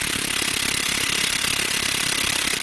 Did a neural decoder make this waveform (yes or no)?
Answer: no